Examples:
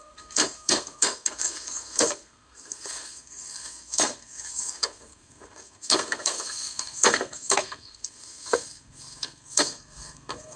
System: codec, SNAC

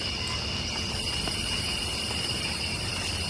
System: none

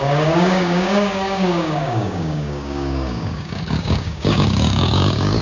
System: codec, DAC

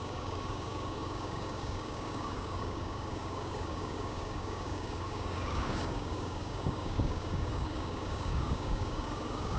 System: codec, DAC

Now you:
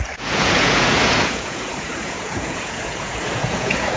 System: vocoder, Vocos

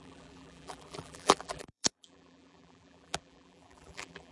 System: vocoder, BigVGAN v2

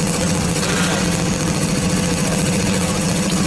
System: vocoder, WaveNeXt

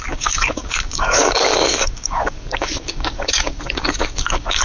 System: codec, DAC